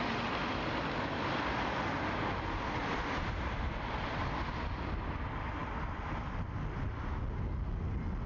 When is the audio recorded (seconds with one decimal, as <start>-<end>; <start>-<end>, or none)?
0.0-2.8; 4.2-8.3